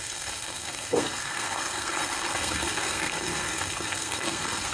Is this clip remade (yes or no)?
yes